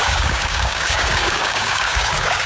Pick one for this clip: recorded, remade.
remade